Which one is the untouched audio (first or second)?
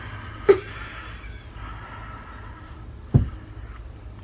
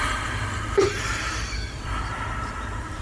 first